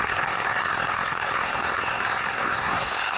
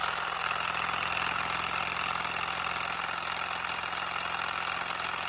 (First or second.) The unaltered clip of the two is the second